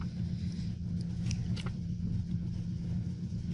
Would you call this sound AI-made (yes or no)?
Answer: no